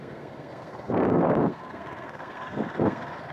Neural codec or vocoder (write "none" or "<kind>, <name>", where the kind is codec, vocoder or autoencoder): codec, SNAC